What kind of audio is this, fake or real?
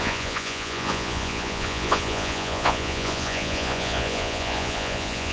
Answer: fake